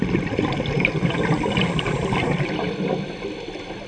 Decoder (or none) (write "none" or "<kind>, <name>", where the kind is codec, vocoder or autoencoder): none